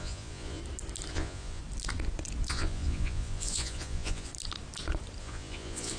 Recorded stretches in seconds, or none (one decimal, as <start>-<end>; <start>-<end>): 0.6-1.1; 1.6-2.5; 4.3-5.2

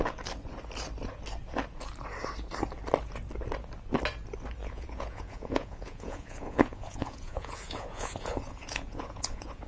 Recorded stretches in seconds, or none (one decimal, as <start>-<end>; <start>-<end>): 0.0-4.6

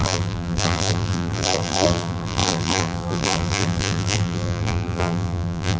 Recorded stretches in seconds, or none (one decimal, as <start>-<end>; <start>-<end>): none

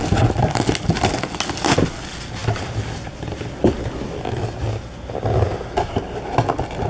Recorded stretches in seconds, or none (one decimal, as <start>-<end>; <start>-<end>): 0.0-6.9